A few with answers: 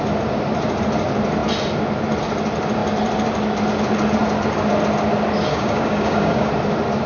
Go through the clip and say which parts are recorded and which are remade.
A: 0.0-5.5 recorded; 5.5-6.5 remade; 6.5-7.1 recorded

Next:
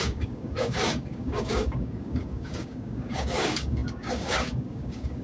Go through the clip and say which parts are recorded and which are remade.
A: 0.0-5.2 remade

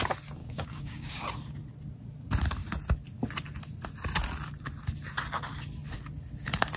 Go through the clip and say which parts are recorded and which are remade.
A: 0.0-0.4 recorded; 0.4-1.2 remade; 1.2-6.8 recorded

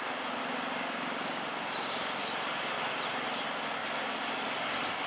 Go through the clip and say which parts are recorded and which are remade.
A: 0.0-0.4 recorded; 0.4-2.2 remade; 2.2-5.1 recorded

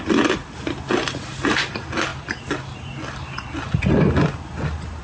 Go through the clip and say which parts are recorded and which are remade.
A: 0.0-5.0 recorded